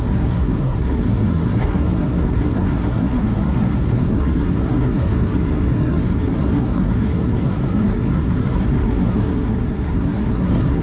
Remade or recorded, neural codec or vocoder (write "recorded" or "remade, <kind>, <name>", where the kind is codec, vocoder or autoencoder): remade, codec, SNAC